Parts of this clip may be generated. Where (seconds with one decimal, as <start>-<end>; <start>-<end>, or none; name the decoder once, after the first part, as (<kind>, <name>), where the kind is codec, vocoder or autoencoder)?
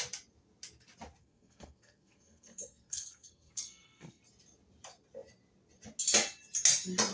1.2-4.2 (codec, SNAC)